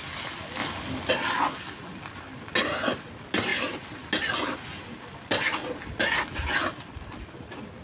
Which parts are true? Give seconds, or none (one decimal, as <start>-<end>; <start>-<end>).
0.0-7.8